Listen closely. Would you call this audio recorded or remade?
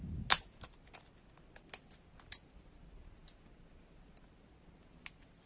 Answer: recorded